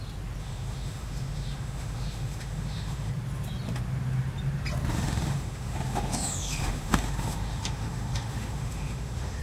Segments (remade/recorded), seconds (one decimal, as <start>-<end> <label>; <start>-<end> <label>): 0.0-0.4 recorded; 0.4-3.1 remade; 3.1-4.9 recorded; 4.9-9.4 remade